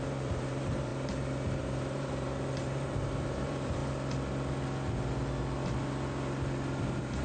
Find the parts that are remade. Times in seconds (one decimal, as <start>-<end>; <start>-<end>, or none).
0.0-3.8; 6.8-7.2